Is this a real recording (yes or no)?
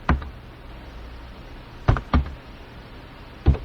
yes